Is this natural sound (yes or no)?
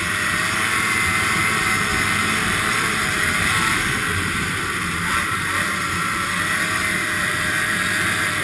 no